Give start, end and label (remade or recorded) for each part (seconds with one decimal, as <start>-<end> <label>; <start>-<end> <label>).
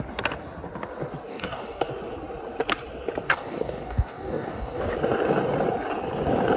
0.0-1.3 recorded; 1.3-1.9 remade; 1.9-3.2 recorded; 3.2-4.8 remade; 4.8-6.6 recorded